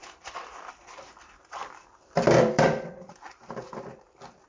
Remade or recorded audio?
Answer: remade